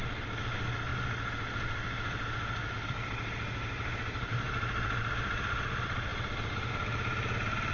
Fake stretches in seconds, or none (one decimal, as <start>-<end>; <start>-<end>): none